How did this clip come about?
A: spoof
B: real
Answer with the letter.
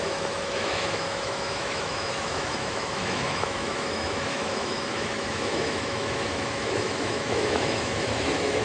A